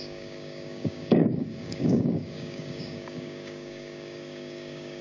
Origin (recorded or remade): remade